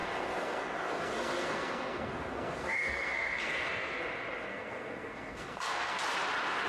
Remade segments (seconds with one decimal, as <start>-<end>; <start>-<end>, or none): 0.0-4.0; 4.5-6.0